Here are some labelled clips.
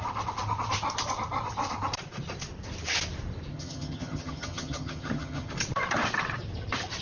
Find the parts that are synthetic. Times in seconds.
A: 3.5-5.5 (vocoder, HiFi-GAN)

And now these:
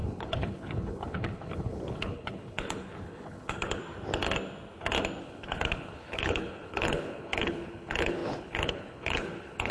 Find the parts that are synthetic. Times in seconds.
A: 0.0-3.8 (codec, HILCodec); 5.2-9.7

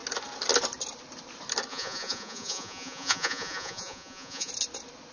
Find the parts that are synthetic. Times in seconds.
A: 1.7-4.5 (vocoder, Vocos)